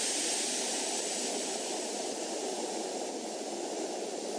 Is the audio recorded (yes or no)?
no